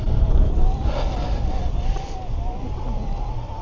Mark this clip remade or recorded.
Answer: recorded